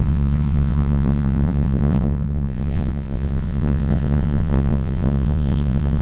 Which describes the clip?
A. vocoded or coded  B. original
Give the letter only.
A